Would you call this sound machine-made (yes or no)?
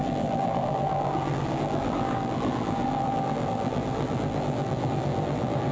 yes